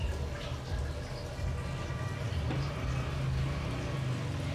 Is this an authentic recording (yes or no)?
yes